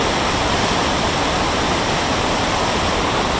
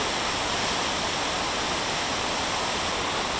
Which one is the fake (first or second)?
first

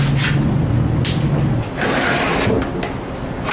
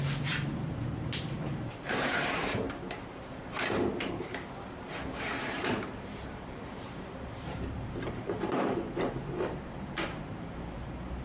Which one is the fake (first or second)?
second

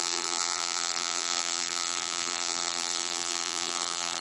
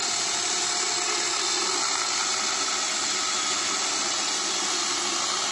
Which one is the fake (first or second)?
first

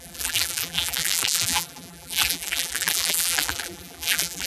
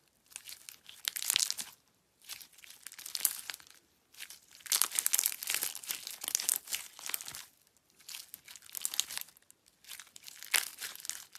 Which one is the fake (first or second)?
first